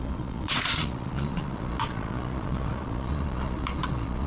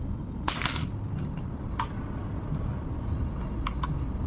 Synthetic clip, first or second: first